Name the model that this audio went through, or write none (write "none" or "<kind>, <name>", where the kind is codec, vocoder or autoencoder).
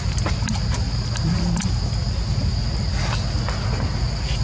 none